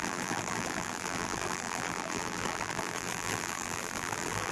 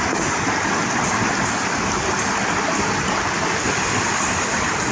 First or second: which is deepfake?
first